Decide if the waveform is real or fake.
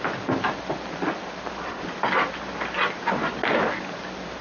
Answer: real